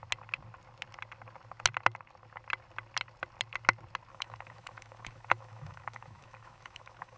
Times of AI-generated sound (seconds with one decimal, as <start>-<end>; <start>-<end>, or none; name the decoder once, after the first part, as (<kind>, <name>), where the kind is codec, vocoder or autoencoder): 4.1-7.2 (autoencoder, DAC-VAE)